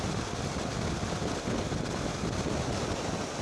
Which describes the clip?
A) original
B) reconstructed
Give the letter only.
A